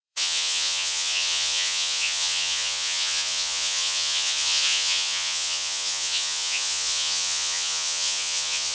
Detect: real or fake fake